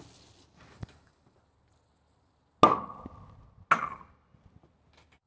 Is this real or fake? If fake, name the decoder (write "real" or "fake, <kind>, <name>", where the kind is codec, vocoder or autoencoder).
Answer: real